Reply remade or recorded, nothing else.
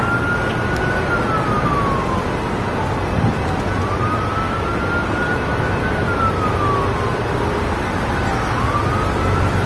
recorded